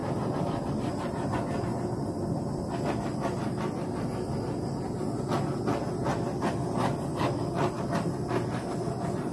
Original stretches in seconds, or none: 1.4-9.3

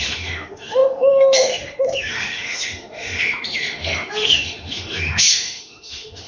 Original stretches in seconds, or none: none

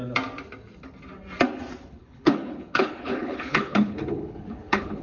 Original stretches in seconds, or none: 0.0-2.0

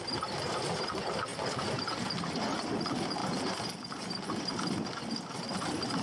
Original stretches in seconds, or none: 0.0-6.0

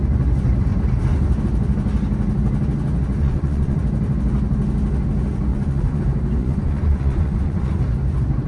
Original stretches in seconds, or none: 0.0-3.2; 3.8-5.5; 6.0-6.4; 7.7-8.5

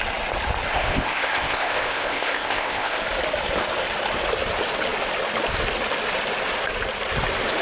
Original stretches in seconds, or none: 0.0-0.7; 3.0-7.6

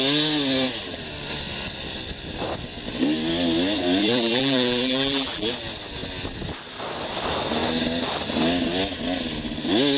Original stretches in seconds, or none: 0.0-4.0; 5.5-10.0

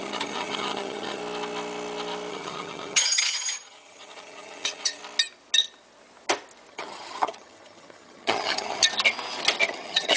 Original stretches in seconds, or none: 1.2-2.3; 5.0-6.7; 8.8-9.7